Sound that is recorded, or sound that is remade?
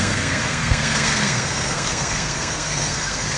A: remade